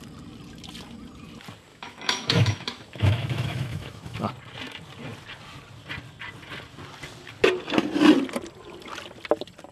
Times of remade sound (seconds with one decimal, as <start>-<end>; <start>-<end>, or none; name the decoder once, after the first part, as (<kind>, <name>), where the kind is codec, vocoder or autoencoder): 1.7-4.3 (autoencoder, DAC-VAE)